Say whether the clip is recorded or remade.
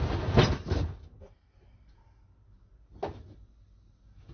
recorded